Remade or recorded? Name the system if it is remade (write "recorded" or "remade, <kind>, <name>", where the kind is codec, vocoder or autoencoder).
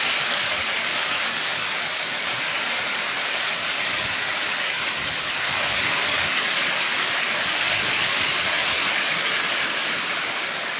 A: remade, codec, DAC